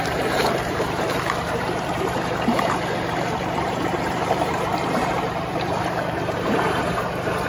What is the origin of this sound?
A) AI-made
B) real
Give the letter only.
A